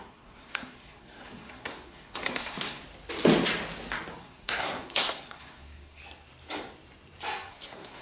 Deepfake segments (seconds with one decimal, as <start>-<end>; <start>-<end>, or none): 0.0-2.8; 4.2-6.0; 7.5-8.0